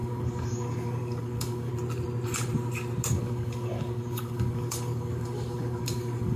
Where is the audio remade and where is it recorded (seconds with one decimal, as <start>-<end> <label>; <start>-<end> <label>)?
0.0-1.7 remade; 1.7-3.1 recorded; 3.1-6.4 remade

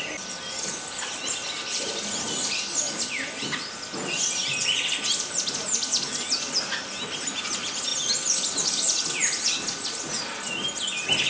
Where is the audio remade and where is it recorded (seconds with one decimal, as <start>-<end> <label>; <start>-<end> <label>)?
0.0-11.3 recorded

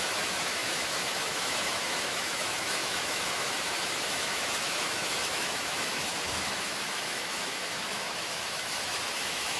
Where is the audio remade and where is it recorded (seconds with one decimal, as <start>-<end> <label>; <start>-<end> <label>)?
0.0-9.6 remade

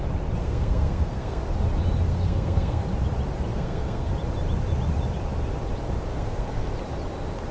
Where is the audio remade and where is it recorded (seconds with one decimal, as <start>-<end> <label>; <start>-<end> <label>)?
0.0-0.4 recorded; 0.4-1.4 remade; 1.4-2.1 recorded; 2.1-2.8 remade; 2.8-3.5 recorded; 3.5-4.1 remade; 4.1-6.1 recorded; 6.1-6.7 remade; 6.7-7.5 recorded

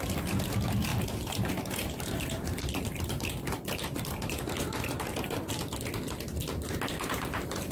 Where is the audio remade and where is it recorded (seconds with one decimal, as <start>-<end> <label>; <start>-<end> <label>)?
0.0-0.9 recorded; 0.9-5.5 remade; 5.5-7.1 recorded; 7.1-7.7 remade

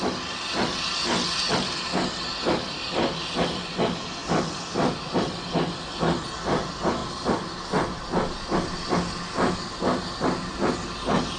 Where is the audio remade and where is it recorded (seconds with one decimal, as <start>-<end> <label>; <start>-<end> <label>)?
0.0-11.4 recorded

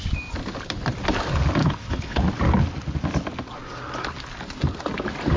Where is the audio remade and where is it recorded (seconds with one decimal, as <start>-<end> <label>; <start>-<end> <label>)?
0.0-1.6 recorded; 1.6-2.2 remade; 2.2-5.4 recorded